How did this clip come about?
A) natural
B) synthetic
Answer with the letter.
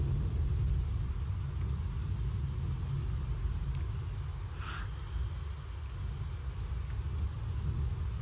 A